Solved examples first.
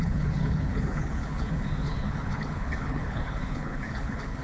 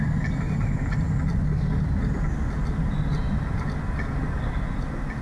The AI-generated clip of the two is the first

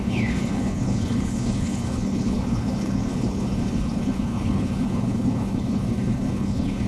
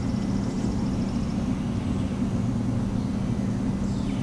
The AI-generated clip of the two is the first